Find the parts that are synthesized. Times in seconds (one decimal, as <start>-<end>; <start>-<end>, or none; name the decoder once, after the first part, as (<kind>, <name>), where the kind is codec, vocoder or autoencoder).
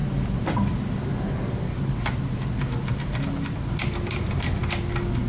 none